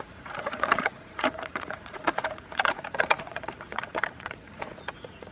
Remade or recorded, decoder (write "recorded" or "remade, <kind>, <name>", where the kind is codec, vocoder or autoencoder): remade, vocoder, Vocos